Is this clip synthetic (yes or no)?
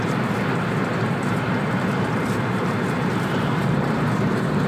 no